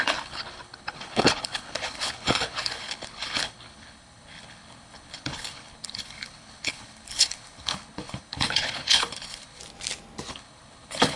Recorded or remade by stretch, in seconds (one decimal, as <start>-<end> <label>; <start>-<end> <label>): 0.0-9.6 remade; 9.6-10.3 recorded; 10.3-11.2 remade